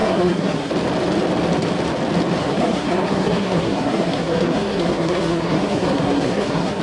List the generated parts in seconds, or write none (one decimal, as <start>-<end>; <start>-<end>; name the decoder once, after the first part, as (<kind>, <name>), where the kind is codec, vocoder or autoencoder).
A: 0.0-0.7 (codec, SNAC); 2.4-6.8